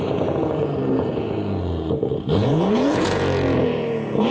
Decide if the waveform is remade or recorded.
remade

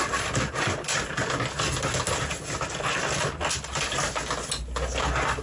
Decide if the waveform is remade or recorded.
recorded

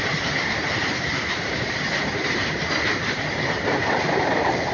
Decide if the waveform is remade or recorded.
remade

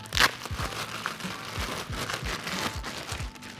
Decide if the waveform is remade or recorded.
recorded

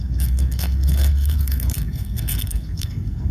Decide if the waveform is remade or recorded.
remade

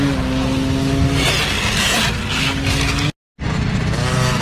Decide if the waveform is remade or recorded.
recorded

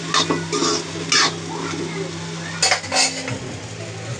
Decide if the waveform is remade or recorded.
recorded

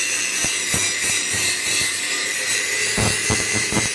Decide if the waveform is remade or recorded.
remade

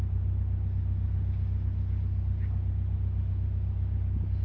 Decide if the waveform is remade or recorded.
recorded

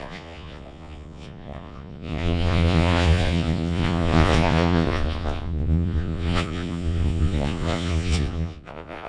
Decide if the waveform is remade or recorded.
remade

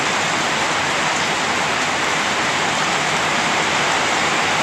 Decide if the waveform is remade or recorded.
remade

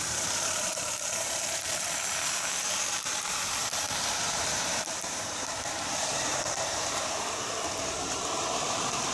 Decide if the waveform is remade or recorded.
remade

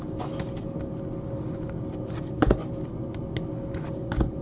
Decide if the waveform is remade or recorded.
recorded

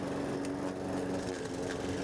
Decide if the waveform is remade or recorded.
recorded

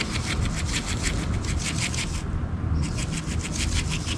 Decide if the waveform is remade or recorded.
recorded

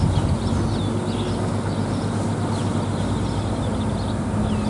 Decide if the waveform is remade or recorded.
recorded